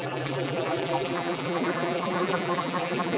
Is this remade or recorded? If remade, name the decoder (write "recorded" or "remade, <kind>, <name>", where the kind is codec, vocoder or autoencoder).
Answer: remade, vocoder, BigVGAN v2